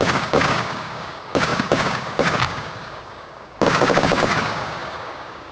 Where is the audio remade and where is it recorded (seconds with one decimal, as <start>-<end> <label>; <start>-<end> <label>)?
0.0-5.5 remade